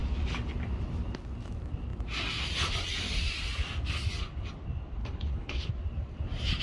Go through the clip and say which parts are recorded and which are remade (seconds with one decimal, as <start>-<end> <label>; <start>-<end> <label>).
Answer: 0.0-5.0 recorded; 5.0-5.7 remade; 5.7-6.6 recorded